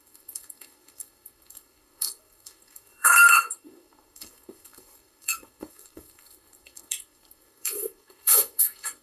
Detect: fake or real fake